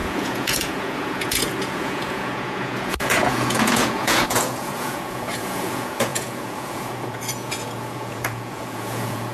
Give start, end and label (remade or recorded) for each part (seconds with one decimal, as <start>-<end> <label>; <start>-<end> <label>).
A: 0.0-9.3 remade